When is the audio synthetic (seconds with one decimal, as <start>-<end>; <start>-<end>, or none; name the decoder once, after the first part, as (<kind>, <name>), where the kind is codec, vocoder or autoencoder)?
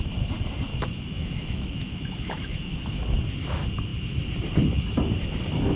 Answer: 0.7-3.0 (autoencoder, DAC-VAE)